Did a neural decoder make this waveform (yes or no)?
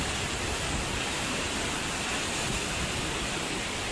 yes